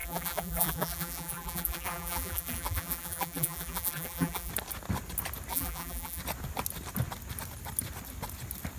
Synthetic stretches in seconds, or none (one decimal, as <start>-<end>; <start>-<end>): 0.0-4.5; 5.5-6.2